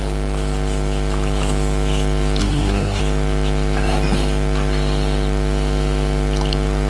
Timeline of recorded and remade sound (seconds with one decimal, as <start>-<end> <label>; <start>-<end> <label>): 0.0-2.4 recorded; 2.4-3.0 remade; 3.0-6.9 recorded